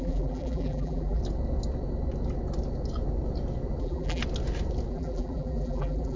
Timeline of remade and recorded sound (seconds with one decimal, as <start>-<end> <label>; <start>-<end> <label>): 0.0-1.2 remade; 1.2-3.8 recorded; 3.8-4.2 remade; 4.2-4.9 recorded; 4.9-6.2 remade